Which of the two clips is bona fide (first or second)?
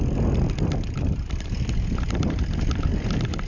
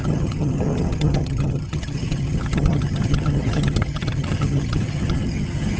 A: first